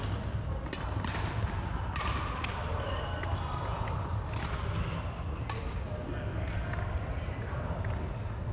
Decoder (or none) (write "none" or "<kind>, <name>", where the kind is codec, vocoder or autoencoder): none